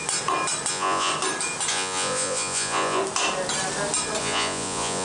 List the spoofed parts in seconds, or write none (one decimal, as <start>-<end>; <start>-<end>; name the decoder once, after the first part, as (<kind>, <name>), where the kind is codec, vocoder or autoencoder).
0.7-1.1 (vocoder, Vocos); 1.7-3.0; 4.2-5.0